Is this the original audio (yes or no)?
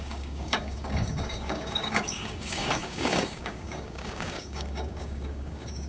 no